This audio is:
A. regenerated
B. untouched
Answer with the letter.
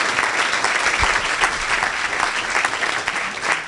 B